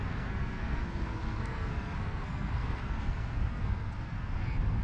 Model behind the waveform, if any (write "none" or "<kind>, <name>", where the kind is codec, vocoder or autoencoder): codec, SNAC